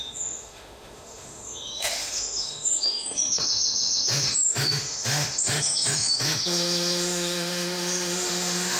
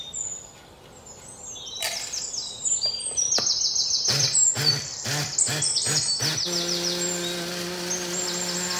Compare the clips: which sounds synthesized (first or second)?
first